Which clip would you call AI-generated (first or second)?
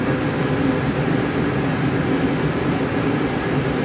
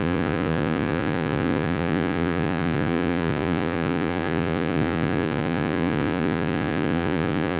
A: second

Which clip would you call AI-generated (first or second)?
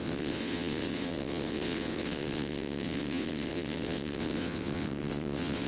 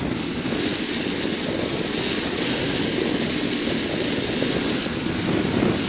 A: first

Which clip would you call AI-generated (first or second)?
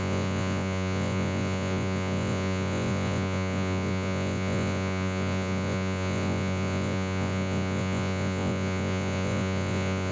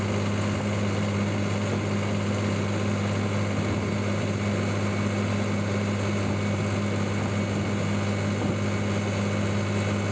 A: first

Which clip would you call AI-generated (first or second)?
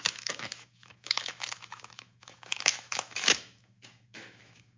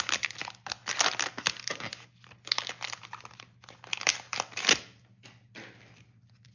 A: first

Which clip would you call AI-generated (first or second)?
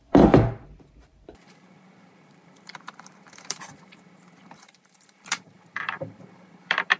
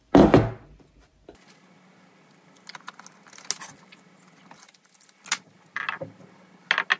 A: first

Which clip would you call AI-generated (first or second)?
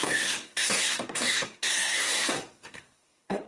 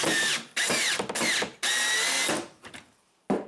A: first